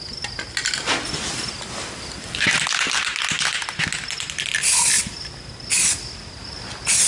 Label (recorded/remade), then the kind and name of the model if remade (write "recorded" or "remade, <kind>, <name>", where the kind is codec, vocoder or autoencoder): recorded